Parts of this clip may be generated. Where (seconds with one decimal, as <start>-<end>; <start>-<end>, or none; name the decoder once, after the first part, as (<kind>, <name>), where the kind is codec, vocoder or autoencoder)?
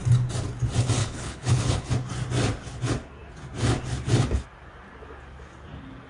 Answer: 1.0-1.9 (codec, HILCodec)